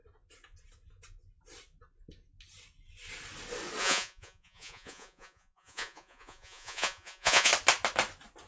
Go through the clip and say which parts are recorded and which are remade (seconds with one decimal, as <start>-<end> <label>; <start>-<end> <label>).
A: 0.0-3.8 recorded; 3.8-7.5 remade; 7.5-8.5 recorded